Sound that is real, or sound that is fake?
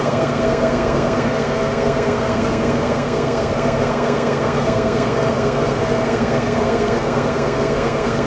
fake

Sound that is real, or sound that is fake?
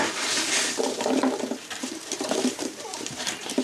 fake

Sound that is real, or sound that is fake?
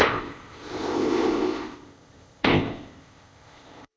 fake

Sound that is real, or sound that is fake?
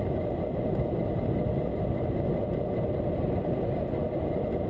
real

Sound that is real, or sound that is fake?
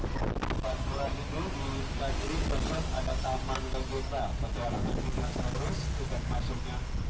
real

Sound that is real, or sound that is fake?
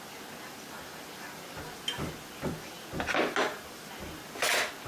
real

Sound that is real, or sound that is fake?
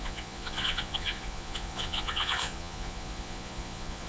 fake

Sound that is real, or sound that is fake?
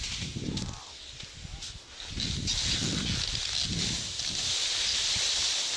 real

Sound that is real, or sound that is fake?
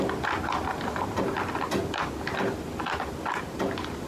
real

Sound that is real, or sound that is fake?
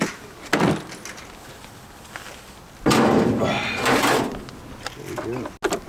real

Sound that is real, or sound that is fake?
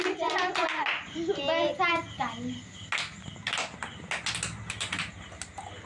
real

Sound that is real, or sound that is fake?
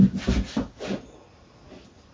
real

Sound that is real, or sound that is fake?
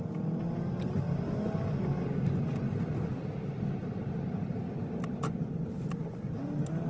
real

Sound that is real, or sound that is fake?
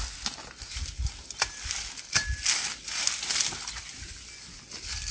real